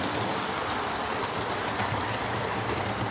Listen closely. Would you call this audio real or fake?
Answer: real